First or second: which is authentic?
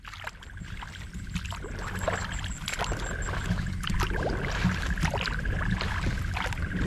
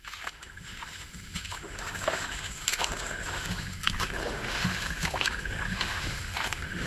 first